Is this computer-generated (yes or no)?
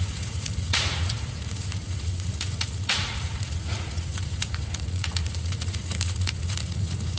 yes